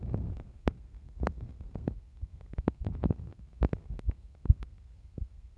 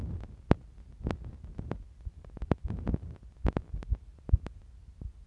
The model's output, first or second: first